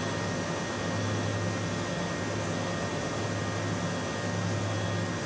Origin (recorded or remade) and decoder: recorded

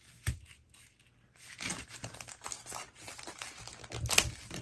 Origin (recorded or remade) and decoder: recorded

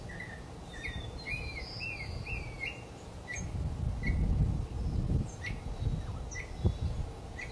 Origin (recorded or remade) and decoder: recorded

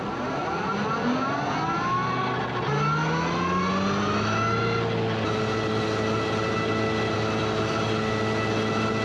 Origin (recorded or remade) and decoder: recorded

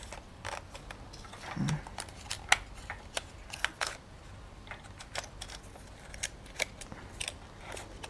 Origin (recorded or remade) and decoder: recorded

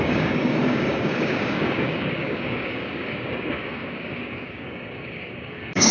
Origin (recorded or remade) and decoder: remade, codec, DAC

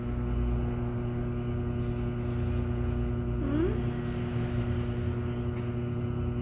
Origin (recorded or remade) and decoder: recorded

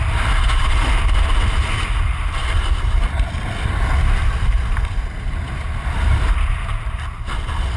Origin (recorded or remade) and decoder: remade, vocoder, BigVGAN v2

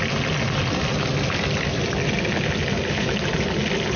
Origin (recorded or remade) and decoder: recorded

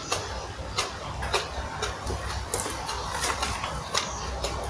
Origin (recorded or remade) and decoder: recorded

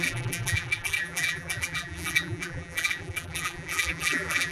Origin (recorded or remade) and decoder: remade, vocoder, BigVGAN v2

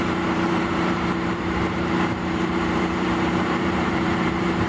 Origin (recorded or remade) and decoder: remade, vocoder, BigVGAN v2